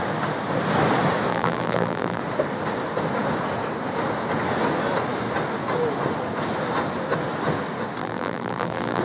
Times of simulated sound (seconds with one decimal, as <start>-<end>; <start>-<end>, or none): 1.3-2.2; 8.0-9.0

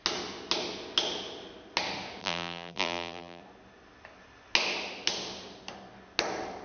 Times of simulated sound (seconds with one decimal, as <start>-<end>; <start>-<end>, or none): 2.2-3.4

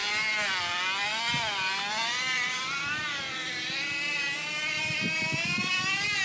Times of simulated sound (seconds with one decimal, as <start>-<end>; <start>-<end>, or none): 2.0-5.7

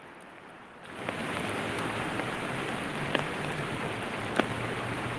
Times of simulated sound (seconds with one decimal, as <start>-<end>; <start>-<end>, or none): 1.2-2.0; 2.9-4.4

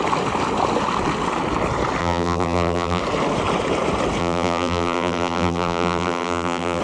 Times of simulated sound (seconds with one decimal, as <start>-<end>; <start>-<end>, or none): 2.0-3.0; 4.2-6.8

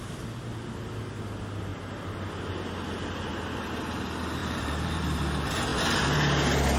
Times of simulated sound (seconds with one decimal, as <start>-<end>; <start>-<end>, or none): 4.4-5.2